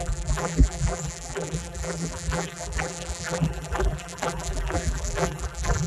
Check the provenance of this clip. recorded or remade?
remade